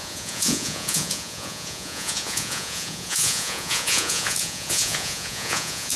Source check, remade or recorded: remade